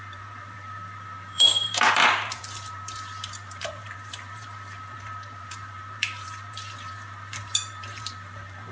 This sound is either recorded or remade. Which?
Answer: remade